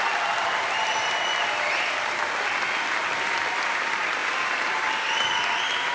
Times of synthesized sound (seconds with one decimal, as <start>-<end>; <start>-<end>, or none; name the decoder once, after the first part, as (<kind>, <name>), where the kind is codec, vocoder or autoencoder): 4.2-5.4 (vocoder, BigVGAN v2)